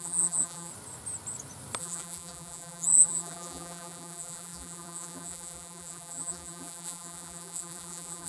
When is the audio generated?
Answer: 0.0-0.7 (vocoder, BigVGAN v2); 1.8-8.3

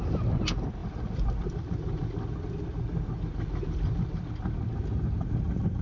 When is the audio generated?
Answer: 0.8-4.3 (vocoder, BigVGAN v2)

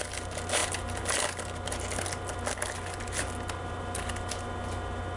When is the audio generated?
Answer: none